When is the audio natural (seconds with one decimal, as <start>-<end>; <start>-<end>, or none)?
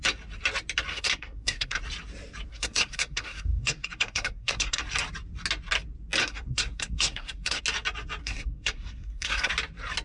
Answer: 0.0-0.9; 1.8-2.5; 4.8-6.2; 7.6-8.2; 9.5-10.0